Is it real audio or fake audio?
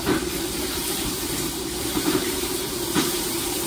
fake